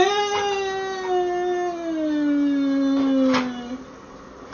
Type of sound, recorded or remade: recorded